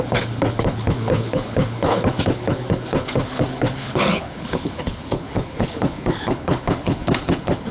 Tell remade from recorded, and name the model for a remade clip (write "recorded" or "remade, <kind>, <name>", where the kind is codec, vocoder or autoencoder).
remade, codec, HILCodec